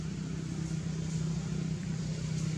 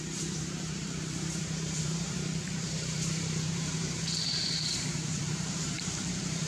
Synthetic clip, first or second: second